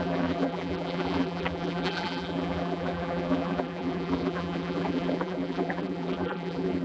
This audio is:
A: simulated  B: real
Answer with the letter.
A